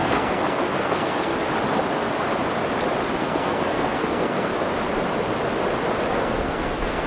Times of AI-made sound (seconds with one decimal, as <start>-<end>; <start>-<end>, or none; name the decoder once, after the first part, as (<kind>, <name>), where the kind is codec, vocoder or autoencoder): 0.0-1.3 (codec, SNAC); 3.2-4.5; 6.1-7.1